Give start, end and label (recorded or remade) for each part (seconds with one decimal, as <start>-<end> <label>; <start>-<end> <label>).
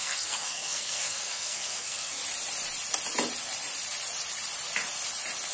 0.0-2.2 remade; 2.2-5.5 recorded